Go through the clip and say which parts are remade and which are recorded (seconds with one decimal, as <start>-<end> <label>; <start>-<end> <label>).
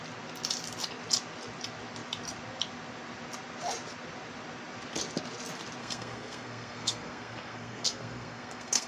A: 0.0-5.8 recorded; 5.8-8.9 remade